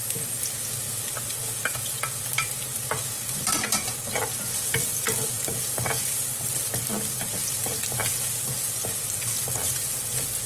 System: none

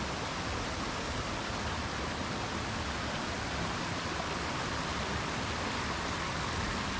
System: none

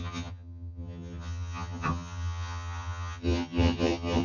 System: vocoder, HiFi-GAN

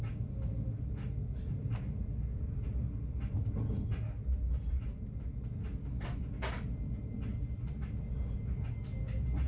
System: none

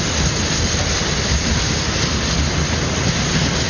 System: none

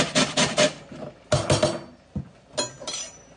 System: none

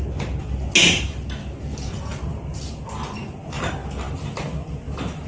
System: none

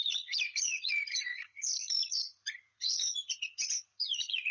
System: vocoder, Vocos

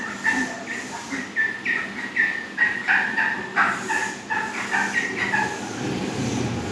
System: none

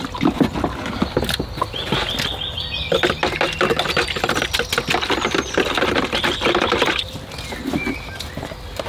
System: none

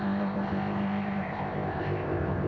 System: codec, ZipCodec